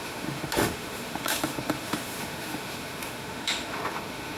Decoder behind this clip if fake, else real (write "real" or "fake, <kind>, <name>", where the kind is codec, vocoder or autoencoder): fake, autoencoder, DAC-VAE